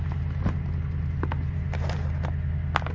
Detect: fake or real real